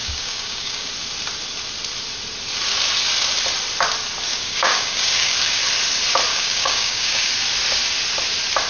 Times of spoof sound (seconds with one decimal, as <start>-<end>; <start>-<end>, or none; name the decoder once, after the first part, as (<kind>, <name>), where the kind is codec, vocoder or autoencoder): 0.0-0.9 (codec, DAC); 4.3-5.6; 6.3-7.3